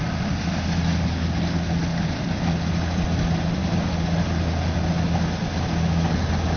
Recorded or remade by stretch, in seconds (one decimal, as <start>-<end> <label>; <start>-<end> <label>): 0.0-6.6 recorded